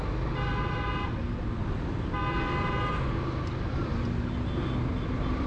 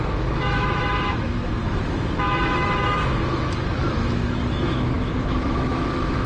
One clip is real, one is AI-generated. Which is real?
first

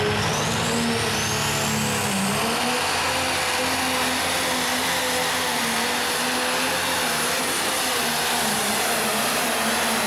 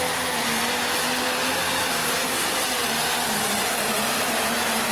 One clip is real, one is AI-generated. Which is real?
first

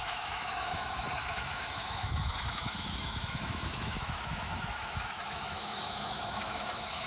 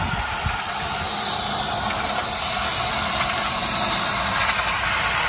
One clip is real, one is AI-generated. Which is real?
second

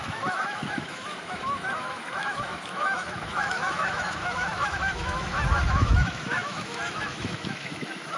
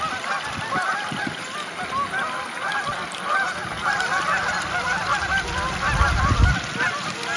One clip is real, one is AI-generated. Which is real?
second